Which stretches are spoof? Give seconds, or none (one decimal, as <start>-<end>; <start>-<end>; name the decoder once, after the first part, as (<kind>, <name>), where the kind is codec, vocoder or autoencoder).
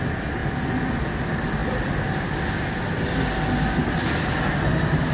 none